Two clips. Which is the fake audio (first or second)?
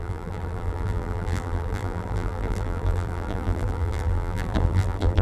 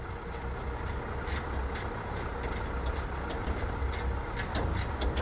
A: first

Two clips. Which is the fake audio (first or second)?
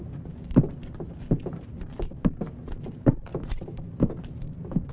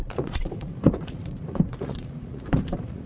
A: second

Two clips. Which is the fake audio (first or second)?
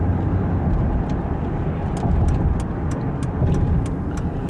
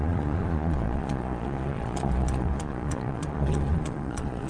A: second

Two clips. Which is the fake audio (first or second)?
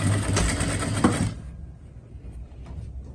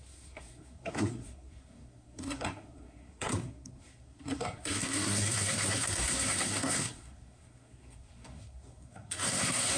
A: second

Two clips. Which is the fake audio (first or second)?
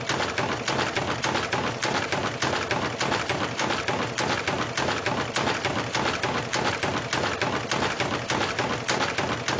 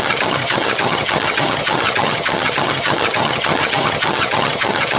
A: second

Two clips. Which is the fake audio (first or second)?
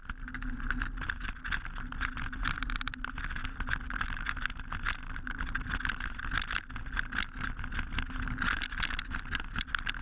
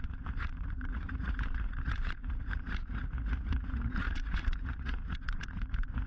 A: second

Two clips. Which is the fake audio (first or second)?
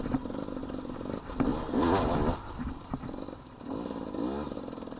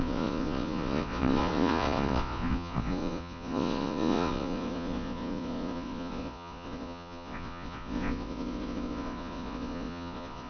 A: second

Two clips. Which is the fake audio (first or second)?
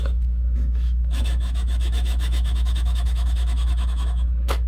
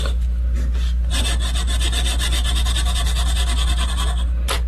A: first